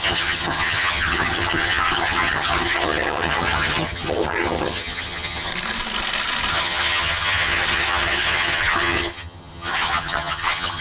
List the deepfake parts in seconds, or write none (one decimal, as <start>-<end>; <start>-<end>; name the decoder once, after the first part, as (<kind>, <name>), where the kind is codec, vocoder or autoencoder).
0.0-5.5 (vocoder, HiFi-GAN); 6.5-10.8